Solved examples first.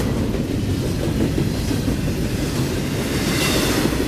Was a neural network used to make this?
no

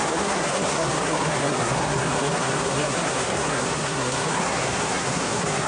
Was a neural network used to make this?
yes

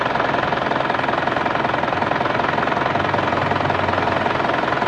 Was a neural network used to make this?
no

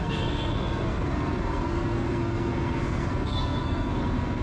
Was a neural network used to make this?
yes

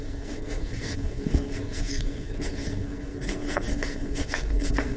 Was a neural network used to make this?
yes